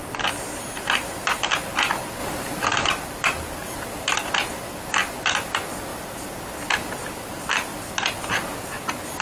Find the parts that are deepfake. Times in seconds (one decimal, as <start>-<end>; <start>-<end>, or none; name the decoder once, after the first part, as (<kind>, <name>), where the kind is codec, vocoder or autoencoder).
2.2-2.9 (vocoder, BigVGAN v2); 3.6-4.3